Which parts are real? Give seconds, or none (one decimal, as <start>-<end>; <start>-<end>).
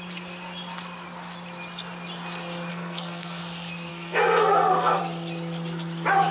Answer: 0.0-2.7; 3.4-3.9; 5.0-6.3